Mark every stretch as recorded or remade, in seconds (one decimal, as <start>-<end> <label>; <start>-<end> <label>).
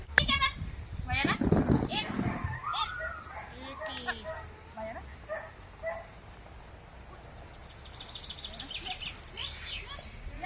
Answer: 0.0-10.5 recorded